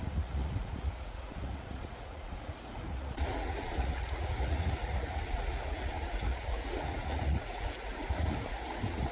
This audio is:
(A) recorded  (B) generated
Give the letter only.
B